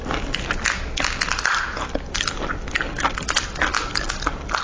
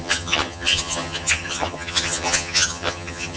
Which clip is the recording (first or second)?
first